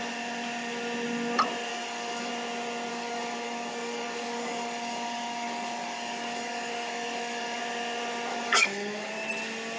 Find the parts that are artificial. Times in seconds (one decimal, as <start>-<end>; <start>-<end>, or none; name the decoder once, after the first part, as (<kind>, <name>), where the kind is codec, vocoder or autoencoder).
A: 1.7-2.3 (codec, DAC); 2.9-7.6; 8.3-9.1